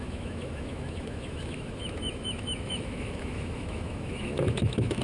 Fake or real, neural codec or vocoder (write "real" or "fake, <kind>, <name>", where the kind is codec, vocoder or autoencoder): fake, autoencoder, DAC-VAE